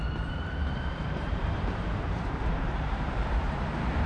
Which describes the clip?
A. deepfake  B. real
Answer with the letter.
A